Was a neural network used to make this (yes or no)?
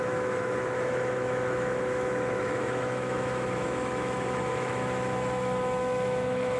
yes